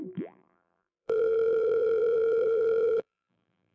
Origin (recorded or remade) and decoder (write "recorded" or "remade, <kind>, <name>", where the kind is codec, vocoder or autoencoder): remade, vocoder, BigVGAN v2